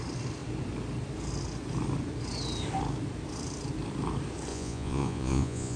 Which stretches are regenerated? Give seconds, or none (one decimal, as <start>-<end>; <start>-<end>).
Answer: 4.5-5.8